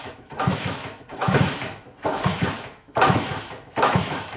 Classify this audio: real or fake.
fake